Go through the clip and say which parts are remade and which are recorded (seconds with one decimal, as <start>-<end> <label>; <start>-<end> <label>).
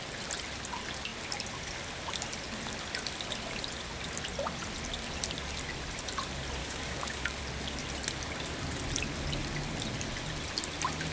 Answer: 0.0-6.6 recorded; 6.6-7.4 remade; 7.4-11.1 recorded